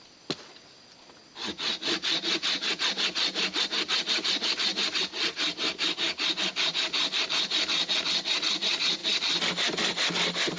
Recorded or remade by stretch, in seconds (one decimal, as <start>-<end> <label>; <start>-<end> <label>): 0.0-10.6 recorded